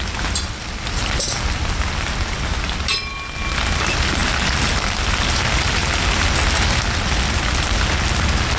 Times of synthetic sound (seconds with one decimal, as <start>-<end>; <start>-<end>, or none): none